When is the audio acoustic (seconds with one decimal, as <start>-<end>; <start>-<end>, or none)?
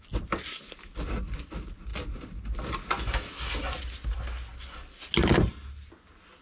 0.0-6.4